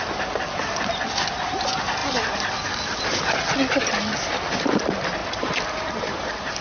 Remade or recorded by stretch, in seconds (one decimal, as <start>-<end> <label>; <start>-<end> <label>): 0.0-5.2 recorded; 5.2-6.6 remade